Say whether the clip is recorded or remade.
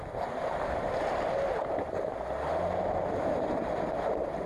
recorded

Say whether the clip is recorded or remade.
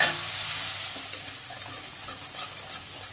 recorded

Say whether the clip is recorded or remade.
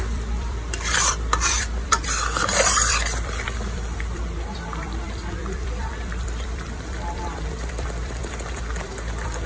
remade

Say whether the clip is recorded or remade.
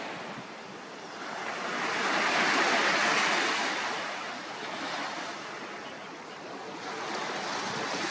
recorded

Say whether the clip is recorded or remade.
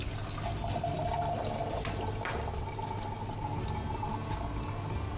recorded